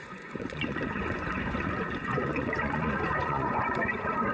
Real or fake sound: fake